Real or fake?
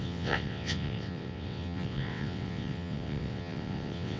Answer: fake